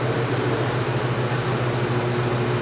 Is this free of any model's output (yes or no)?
yes